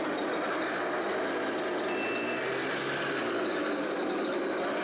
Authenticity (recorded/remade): recorded